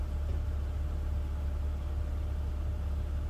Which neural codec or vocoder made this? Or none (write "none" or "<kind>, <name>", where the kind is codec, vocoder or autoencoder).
none